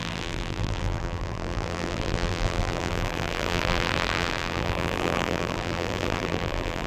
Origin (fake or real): fake